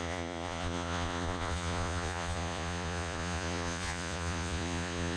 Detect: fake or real fake